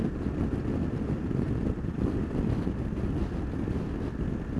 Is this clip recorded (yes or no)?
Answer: yes